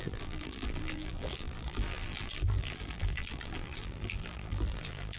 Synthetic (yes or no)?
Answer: yes